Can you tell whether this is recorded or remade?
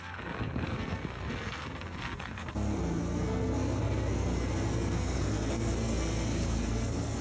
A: remade